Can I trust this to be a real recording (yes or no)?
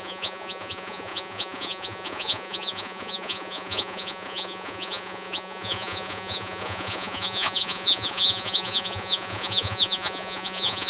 no